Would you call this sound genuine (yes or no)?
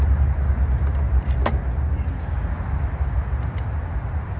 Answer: yes